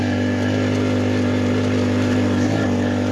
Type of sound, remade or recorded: recorded